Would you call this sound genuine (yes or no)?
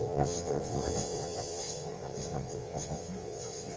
no